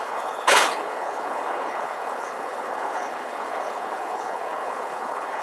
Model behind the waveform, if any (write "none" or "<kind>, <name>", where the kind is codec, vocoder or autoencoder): codec, HILCodec